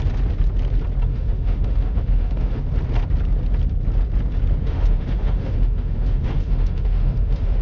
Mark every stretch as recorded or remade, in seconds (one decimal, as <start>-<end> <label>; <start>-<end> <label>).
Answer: 0.0-1.1 recorded; 1.1-2.6 remade; 2.6-4.6 recorded; 4.6-7.6 remade